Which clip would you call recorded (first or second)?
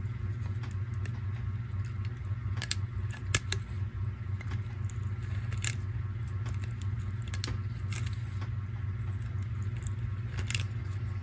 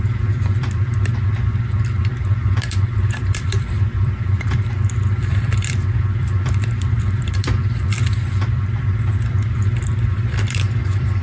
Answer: first